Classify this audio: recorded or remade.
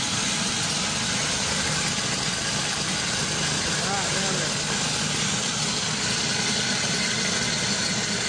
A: recorded